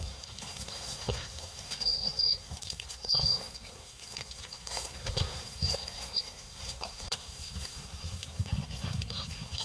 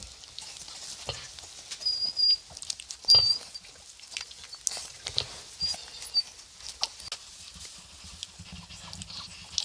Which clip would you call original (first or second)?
second